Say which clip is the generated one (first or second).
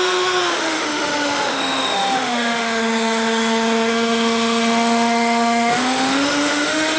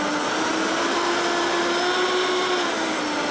first